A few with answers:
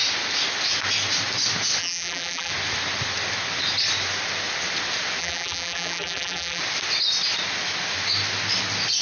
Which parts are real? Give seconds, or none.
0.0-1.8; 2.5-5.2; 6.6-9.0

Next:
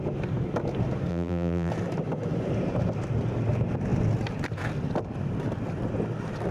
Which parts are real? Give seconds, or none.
0.0-1.1; 1.7-6.5

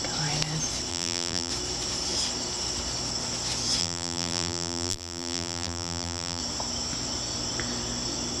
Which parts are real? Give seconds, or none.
0.0-0.9; 1.5-3.8; 6.4-8.4